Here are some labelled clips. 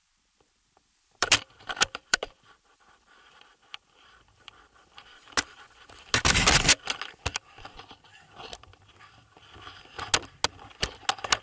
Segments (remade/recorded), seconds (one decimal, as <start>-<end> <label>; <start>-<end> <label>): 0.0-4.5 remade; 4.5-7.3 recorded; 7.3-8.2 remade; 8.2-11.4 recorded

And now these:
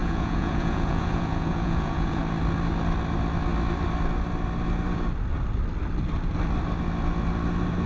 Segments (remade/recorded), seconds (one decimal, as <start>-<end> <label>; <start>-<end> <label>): 0.0-2.2 remade; 2.2-7.9 recorded

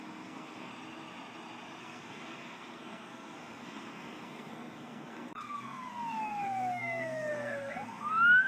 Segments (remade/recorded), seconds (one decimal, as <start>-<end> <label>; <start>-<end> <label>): 0.0-0.7 remade; 0.7-1.8 recorded; 1.8-8.5 remade

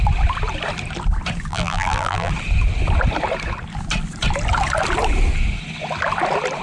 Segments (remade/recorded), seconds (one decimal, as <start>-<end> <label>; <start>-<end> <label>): 0.0-1.5 recorded; 1.5-2.3 remade; 2.3-6.6 recorded

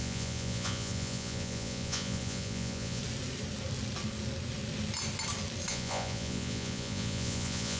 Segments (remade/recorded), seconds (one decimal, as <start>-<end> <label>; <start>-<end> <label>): 0.0-3.0 remade; 3.0-5.7 recorded; 5.7-7.8 remade